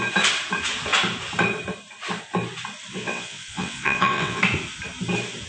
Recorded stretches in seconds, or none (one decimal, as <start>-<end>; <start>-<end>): 0.0-2.9; 4.4-5.5